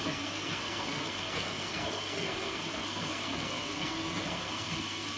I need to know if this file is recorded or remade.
remade